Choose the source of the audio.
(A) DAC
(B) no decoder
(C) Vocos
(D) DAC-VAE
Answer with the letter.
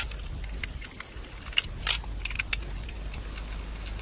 B